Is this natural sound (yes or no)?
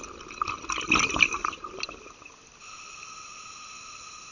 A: yes